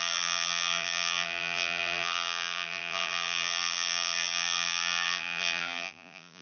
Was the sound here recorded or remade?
remade